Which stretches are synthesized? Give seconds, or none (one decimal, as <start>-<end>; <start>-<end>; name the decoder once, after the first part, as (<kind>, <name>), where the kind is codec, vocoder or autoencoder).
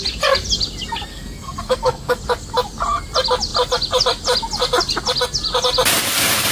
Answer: 1.1-2.2 (codec, SNAC)